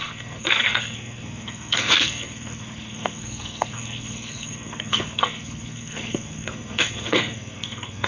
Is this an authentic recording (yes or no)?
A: no